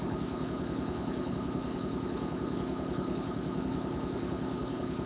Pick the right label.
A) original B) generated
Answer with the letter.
B